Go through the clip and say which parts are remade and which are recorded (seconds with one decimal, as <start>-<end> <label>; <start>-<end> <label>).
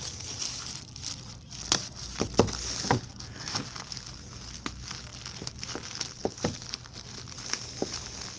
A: 0.0-8.4 recorded